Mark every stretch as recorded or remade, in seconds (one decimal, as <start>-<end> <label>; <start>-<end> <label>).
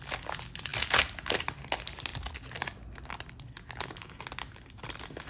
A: 0.0-5.3 recorded